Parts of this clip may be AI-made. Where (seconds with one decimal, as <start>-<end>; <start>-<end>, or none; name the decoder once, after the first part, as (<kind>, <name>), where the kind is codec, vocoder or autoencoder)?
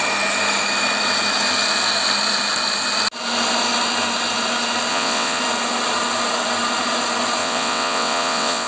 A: 4.9-5.4 (vocoder, WaveNeXt); 7.4-8.7